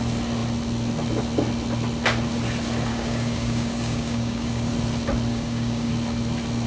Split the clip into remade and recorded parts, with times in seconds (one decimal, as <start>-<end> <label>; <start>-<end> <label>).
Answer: 0.0-2.9 recorded; 2.9-4.7 remade; 4.7-5.3 recorded; 5.3-5.9 remade; 5.9-6.7 recorded